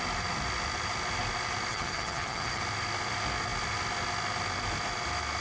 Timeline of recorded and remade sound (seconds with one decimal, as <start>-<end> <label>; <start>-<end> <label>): 0.0-1.7 recorded; 1.7-2.6 remade; 2.6-5.4 recorded